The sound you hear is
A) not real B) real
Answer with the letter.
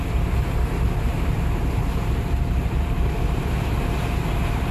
A